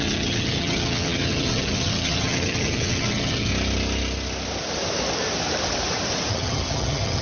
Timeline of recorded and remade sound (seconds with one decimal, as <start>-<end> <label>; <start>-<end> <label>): 0.0-3.5 remade; 3.5-6.3 recorded; 6.3-7.2 remade

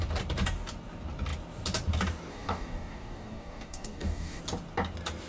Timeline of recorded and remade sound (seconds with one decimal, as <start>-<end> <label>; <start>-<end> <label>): 0.0-2.3 recorded; 2.3-4.4 remade; 4.4-5.3 recorded

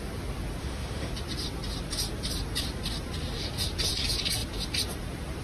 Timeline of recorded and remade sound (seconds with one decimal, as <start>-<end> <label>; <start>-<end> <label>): 0.0-0.6 recorded; 0.6-1.1 remade; 1.1-5.4 recorded

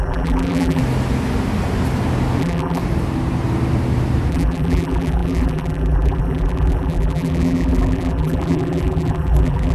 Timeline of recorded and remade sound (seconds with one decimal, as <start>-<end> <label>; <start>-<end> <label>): 0.0-0.8 remade; 0.8-2.4 recorded; 2.4-2.8 remade; 2.8-4.3 recorded; 4.3-9.7 remade

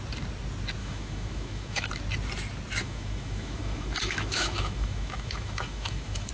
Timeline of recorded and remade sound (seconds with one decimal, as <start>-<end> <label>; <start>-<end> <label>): 0.0-0.8 recorded; 0.8-1.9 remade; 1.9-2.8 recorded; 2.8-6.3 remade

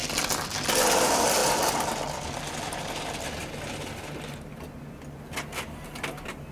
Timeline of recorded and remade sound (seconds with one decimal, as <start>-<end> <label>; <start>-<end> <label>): 0.0-6.5 recorded